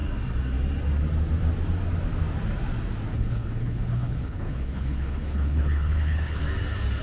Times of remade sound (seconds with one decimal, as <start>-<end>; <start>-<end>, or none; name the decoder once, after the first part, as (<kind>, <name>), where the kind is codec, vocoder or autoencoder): 3.1-6.4 (codec, HILCodec)